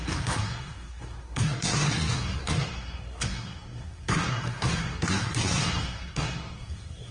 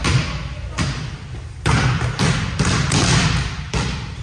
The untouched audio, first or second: second